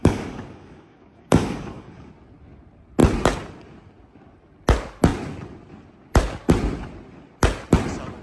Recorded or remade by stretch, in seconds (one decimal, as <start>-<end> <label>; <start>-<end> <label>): 0.0-2.1 remade; 2.1-8.2 recorded